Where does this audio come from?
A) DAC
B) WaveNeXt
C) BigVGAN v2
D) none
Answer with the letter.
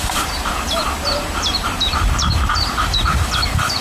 C